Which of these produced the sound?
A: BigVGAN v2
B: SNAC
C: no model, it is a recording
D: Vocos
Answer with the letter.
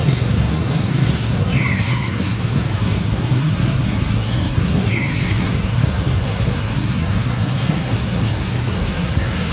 B